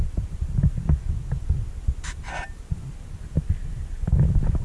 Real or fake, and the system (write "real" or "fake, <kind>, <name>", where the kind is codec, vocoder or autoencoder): real